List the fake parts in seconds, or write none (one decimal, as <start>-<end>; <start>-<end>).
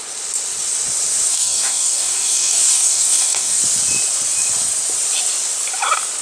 1.3-3.6